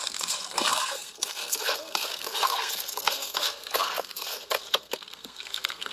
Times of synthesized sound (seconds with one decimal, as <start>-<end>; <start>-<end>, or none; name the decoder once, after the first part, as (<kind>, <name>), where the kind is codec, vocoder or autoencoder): 0.0-5.9 (codec, SNAC)